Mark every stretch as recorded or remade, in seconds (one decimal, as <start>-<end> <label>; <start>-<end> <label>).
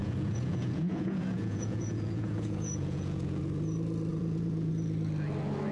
0.0-3.4 remade; 3.4-4.1 recorded; 4.1-4.7 remade; 4.7-5.7 recorded